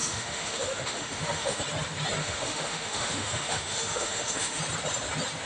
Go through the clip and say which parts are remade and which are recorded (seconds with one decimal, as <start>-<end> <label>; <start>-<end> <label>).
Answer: 0.0-1.6 remade; 1.6-2.2 recorded; 2.2-4.6 remade; 4.6-5.5 recorded